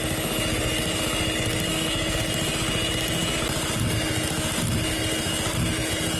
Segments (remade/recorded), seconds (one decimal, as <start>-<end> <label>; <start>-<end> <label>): 0.0-1.7 recorded; 1.7-2.2 remade; 2.2-6.2 recorded